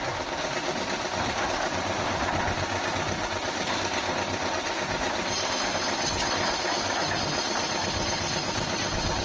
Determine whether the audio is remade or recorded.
recorded